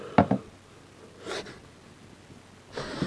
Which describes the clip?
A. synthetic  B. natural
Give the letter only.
B